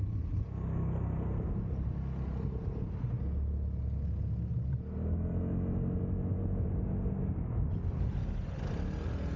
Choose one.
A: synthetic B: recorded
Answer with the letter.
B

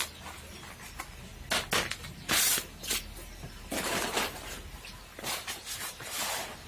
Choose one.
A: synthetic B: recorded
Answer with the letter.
B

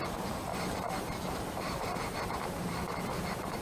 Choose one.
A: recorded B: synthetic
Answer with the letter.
B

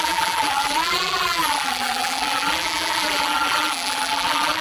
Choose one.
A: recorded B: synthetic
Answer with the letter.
B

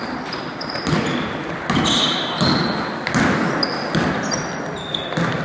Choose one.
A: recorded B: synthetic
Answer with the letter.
A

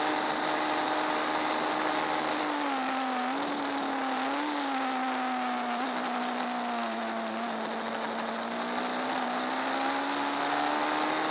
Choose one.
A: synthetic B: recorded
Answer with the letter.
B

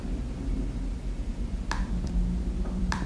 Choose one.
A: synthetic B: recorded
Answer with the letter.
A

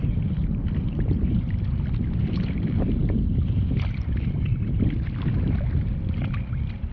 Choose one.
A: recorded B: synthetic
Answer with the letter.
A